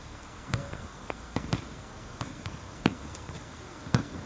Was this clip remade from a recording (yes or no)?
yes